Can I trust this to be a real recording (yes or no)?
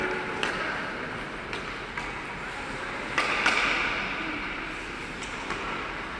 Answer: yes